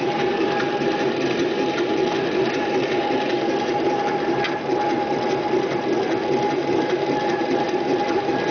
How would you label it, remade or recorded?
recorded